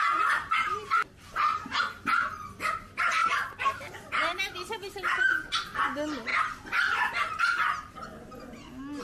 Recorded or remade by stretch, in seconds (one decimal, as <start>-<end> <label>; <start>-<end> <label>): 0.0-9.0 recorded